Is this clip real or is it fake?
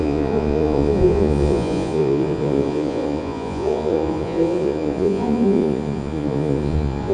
fake